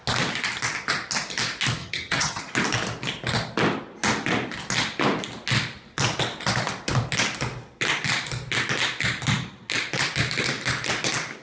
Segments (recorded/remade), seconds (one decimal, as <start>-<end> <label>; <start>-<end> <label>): 0.0-1.8 recorded; 1.8-2.4 remade; 2.4-11.4 recorded